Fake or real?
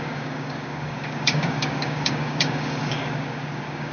fake